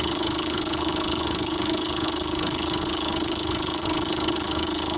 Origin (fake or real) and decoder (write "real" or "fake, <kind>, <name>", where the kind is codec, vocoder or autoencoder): fake, codec, HILCodec